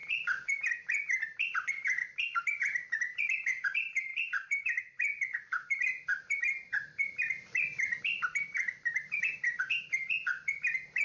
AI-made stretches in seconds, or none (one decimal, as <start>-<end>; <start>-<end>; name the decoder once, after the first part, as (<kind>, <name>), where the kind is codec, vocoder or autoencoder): 0.0-11.0 (vocoder, BigVGAN v2)